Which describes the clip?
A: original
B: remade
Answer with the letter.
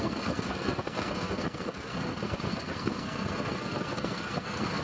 B